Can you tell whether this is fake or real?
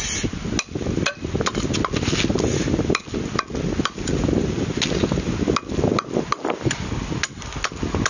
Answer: real